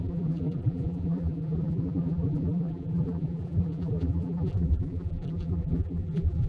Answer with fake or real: fake